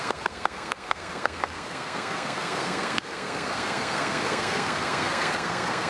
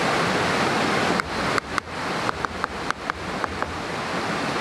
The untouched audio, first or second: second